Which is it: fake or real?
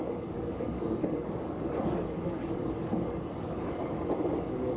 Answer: fake